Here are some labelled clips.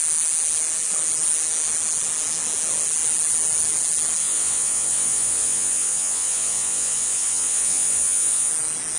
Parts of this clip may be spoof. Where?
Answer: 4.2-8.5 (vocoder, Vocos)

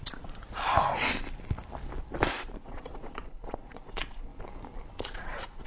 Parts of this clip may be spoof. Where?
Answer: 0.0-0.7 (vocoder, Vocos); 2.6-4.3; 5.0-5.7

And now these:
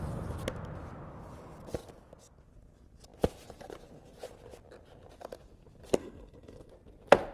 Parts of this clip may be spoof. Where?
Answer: 6.0-6.7 (codec, SNAC)

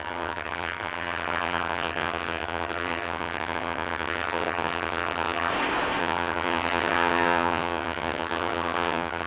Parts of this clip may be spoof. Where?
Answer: 0.0-5.5 (vocoder, HiFi-GAN); 6.0-9.3